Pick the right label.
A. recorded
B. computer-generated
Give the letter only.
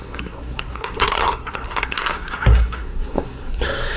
B